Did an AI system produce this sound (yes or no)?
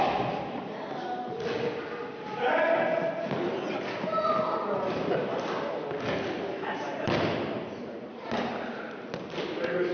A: no